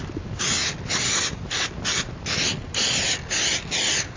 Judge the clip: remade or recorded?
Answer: recorded